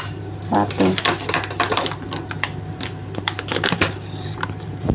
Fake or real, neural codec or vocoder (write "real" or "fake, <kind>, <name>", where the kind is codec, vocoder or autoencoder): fake, vocoder, BigVGAN v2